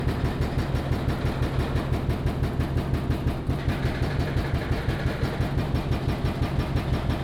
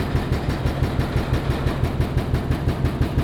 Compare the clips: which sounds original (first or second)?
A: first